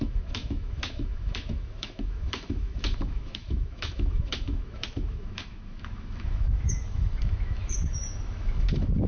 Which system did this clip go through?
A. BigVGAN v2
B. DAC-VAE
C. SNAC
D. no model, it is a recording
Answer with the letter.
B